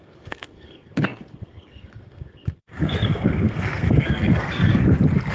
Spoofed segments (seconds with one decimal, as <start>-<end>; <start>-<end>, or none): 0.0-4.8